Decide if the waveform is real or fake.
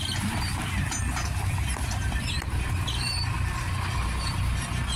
real